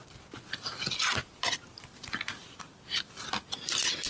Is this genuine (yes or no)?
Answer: yes